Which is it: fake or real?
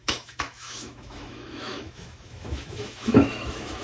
fake